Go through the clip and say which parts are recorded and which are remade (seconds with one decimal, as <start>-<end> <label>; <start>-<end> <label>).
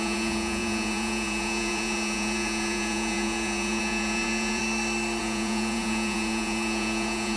0.0-4.6 remade; 4.6-5.2 recorded; 5.2-7.4 remade